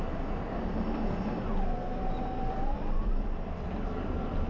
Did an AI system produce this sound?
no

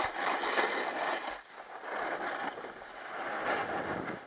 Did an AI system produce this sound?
no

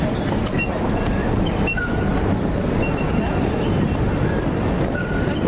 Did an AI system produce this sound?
no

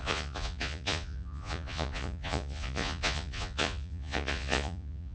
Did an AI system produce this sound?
yes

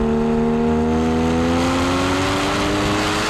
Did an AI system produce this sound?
no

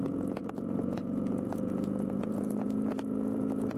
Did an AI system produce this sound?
yes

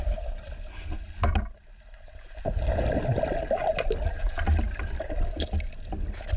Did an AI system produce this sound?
no